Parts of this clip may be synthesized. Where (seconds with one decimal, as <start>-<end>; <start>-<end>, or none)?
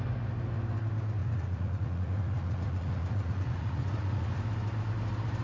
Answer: 1.2-4.4